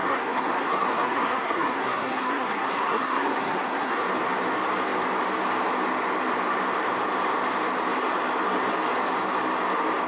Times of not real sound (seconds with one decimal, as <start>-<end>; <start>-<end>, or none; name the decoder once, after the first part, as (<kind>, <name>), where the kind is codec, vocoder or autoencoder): 0.0-4.0 (codec, SNAC)